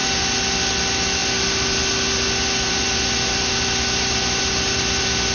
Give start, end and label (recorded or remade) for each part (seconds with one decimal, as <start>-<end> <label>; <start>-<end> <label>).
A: 0.0-0.6 recorded; 0.6-5.3 remade